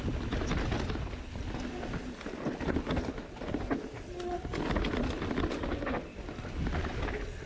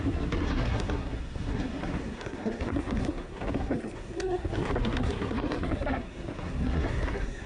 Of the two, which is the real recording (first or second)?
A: first